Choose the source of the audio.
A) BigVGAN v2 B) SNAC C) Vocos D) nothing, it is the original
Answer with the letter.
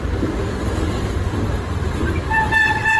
A